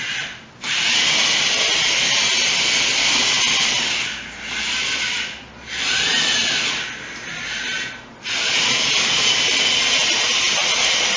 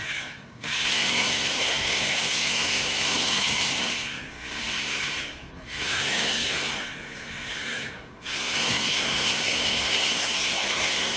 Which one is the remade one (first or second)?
second